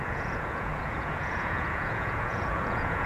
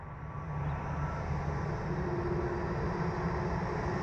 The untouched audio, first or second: second